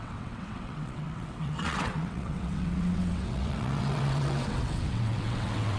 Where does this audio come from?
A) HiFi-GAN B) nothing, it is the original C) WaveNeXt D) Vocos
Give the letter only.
C